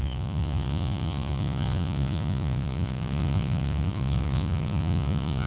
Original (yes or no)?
no